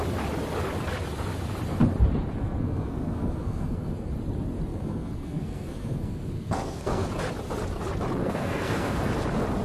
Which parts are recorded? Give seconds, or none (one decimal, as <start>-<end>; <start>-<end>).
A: 0.0-2.4; 4.1-4.7; 7.1-8.2; 9.1-9.6